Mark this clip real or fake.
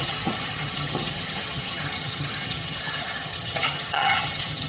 fake